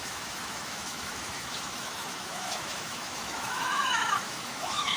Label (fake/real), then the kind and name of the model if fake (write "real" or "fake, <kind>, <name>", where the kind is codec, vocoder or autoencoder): fake, autoencoder, DAC-VAE